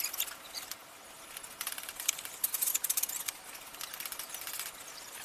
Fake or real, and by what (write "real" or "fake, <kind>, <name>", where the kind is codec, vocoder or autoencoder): real